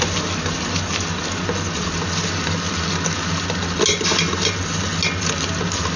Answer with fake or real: real